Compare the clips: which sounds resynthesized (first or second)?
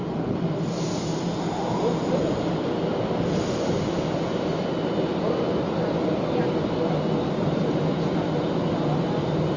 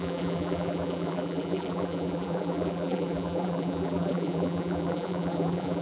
second